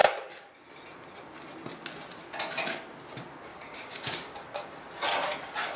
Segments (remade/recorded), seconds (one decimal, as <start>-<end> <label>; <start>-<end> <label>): 0.0-3.5 recorded; 3.5-4.7 remade; 4.7-5.8 recorded